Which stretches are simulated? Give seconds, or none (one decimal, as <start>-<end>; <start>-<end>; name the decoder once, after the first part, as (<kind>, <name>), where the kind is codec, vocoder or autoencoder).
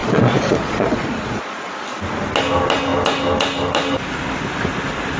0.0-1.7 (vocoder, Vocos)